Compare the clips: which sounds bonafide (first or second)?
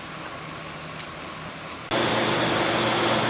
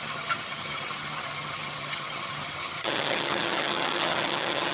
first